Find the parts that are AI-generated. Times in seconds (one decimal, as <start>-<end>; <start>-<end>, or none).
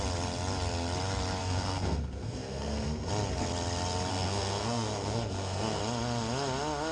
1.4-3.1; 4.1-5.8